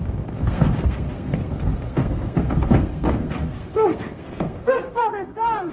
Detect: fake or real fake